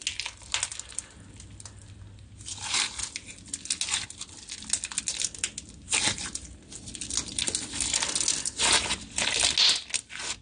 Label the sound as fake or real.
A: real